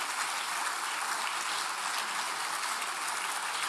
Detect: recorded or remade recorded